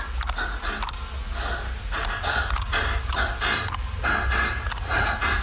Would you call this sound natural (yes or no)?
yes